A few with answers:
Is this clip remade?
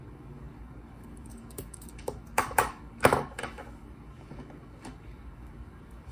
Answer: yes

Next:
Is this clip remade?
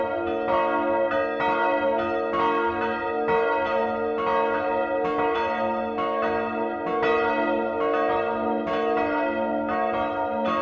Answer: no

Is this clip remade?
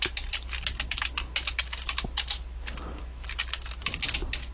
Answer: no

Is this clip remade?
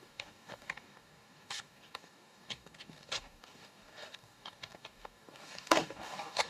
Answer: yes